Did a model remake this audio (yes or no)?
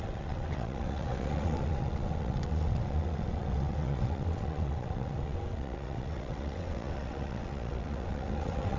yes